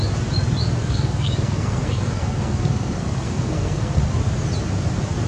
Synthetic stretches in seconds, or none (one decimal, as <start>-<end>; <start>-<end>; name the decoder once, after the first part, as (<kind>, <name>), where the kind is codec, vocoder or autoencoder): 0.8-4.0 (codec, SNAC)